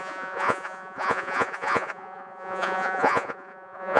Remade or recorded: remade